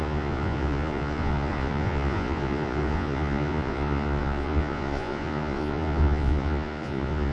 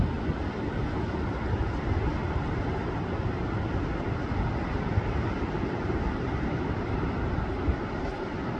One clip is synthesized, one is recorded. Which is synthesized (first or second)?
first